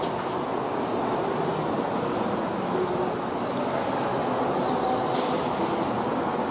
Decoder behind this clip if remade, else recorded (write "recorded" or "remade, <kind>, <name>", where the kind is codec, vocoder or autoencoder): recorded